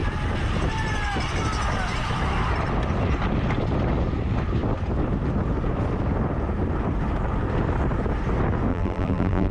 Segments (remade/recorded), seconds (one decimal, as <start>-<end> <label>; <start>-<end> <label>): 0.0-8.7 recorded; 8.7-9.5 remade